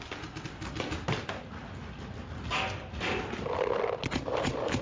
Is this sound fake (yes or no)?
no